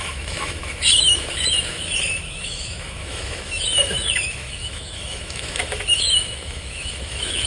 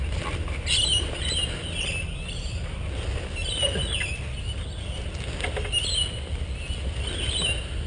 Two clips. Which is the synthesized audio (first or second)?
first